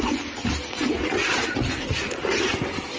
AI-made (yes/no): no